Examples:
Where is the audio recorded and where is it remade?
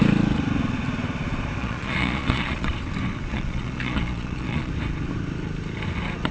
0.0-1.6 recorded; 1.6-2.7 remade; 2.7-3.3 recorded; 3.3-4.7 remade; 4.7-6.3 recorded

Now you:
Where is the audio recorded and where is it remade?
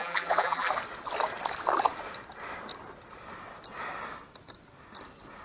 0.0-0.7 remade; 0.7-5.4 recorded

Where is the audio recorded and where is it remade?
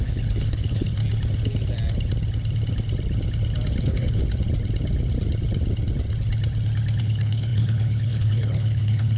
0.0-1.0 remade; 1.0-3.8 recorded; 3.8-4.2 remade; 4.2-7.0 recorded; 7.0-9.2 remade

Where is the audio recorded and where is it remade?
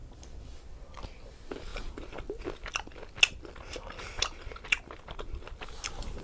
0.0-6.2 recorded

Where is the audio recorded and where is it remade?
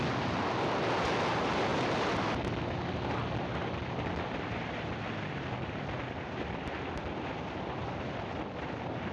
0.0-9.1 recorded